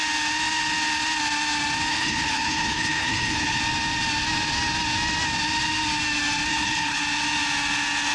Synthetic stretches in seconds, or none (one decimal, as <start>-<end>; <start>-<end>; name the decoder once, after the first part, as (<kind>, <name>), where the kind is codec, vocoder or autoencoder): 1.9-3.6 (codec, HILCodec); 6.5-7.0